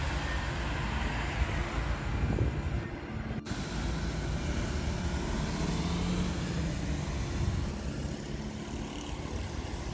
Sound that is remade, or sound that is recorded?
recorded